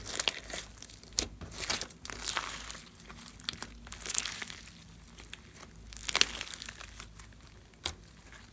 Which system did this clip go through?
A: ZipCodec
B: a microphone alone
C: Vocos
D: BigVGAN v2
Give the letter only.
B